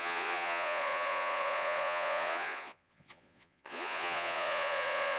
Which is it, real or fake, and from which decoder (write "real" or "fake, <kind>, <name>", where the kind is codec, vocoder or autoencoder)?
fake, vocoder, Vocos